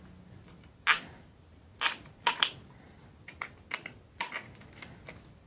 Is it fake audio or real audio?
real